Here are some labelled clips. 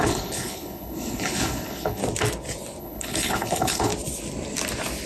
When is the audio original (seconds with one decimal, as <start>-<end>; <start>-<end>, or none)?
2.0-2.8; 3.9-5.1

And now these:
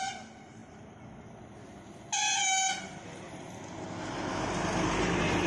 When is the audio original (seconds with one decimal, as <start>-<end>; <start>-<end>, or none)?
0.0-5.5

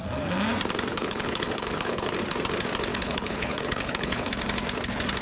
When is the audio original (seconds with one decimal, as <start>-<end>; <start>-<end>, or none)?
0.0-0.9; 2.1-2.9; 4.3-5.2

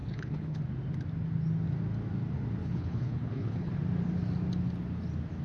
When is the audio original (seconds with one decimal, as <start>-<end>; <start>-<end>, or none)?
0.6-2.6; 3.7-5.4

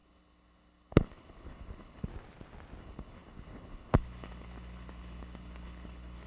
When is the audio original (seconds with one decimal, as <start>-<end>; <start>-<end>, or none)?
2.1-2.8

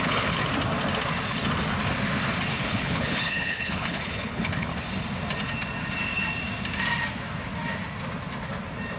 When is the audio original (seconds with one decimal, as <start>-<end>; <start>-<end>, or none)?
0.4-2.5; 4.7-9.0

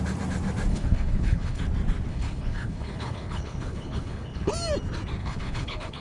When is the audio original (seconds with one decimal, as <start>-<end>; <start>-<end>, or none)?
0.0-0.7; 1.6-2.1; 4.5-5.2

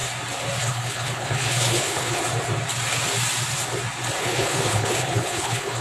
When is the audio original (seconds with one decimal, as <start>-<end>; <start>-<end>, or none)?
0.0-0.6; 2.2-4.2